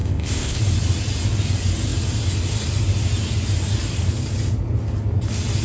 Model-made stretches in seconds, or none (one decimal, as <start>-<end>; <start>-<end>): 0.0-0.6